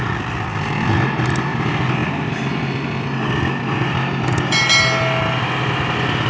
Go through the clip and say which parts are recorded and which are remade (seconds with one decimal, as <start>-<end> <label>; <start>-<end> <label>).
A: 0.0-6.3 recorded